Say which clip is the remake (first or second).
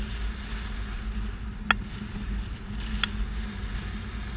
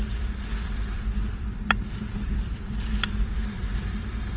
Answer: second